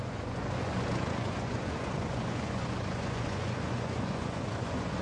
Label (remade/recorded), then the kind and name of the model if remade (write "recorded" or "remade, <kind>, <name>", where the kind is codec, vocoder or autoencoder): remade, vocoder, Vocos